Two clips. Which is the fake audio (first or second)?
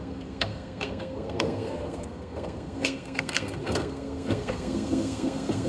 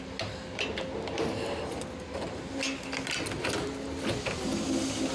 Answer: first